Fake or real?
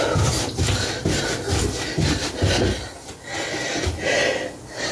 real